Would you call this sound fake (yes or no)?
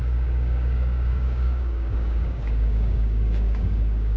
yes